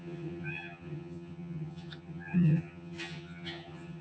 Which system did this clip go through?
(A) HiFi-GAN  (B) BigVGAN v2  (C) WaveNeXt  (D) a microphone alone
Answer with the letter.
A